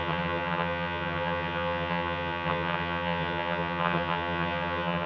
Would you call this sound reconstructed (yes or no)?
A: yes